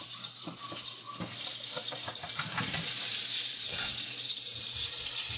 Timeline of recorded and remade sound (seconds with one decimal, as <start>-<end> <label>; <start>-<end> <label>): 0.0-1.7 recorded; 1.7-4.9 remade; 4.9-5.4 recorded